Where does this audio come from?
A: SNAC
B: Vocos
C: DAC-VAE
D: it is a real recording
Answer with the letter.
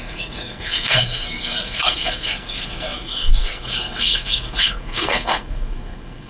A